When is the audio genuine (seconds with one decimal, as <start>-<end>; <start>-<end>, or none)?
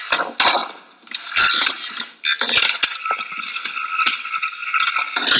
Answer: 0.0-5.4